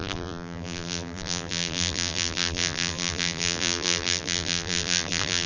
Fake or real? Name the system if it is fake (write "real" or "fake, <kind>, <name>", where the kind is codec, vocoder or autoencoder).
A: fake, vocoder, BigVGAN v2